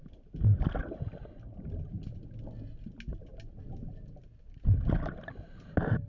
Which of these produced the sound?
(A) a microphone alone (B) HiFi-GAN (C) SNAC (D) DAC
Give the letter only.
A